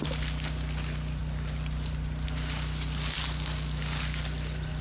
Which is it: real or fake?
real